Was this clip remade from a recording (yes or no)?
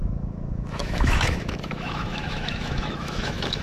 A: yes